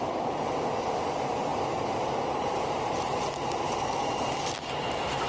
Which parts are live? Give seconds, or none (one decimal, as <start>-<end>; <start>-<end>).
0.0-5.3